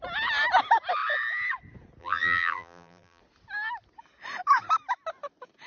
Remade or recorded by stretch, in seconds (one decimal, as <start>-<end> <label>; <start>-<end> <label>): 0.0-2.0 recorded; 2.0-3.2 remade; 3.2-5.7 recorded